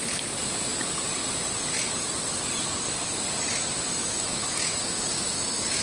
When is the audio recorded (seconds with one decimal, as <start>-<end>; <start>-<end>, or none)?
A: 0.0-4.0